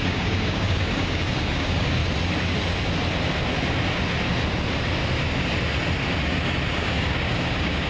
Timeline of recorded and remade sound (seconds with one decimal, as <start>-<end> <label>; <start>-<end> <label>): 0.0-2.0 remade; 2.0-6.7 recorded; 6.7-7.9 remade